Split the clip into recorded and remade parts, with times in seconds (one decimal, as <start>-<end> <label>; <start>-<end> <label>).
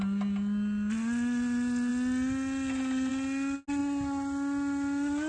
0.0-5.3 recorded